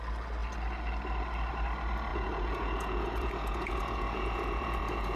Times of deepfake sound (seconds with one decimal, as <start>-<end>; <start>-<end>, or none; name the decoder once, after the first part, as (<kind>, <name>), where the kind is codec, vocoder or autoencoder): 2.1-5.2 (vocoder, Vocos)

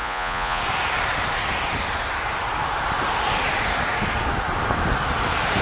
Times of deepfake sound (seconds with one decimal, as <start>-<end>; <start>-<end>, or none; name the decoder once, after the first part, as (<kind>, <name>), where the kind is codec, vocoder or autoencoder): 0.0-0.6 (vocoder, Vocos)

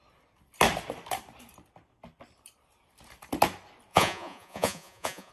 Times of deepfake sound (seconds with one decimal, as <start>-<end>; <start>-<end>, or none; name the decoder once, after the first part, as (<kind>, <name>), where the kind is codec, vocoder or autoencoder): 3.9-5.3 (vocoder, Vocos)

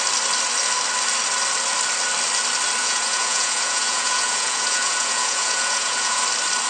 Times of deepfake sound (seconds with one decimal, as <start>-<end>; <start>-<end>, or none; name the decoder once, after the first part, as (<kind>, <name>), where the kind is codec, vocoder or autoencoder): 2.8-6.2 (vocoder, Vocos)

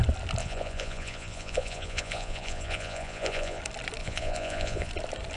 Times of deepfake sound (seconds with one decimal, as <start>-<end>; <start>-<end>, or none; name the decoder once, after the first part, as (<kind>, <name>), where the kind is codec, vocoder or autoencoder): 0.4-3.6 (vocoder, Vocos); 4.0-4.9

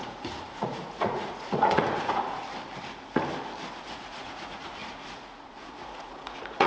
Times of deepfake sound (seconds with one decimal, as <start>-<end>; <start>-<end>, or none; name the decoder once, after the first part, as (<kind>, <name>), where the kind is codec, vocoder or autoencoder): 0.0-2.4 (vocoder, Vocos); 3.8-6.7

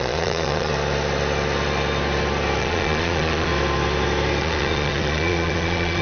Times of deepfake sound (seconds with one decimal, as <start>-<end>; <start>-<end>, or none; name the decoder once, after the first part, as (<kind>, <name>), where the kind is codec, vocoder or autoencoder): 0.0-0.7 (vocoder, Vocos); 2.6-3.5; 4.4-6.0